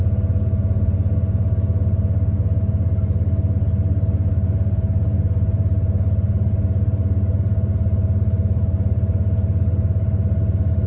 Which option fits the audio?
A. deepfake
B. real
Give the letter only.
B